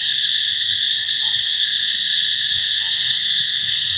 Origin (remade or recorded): remade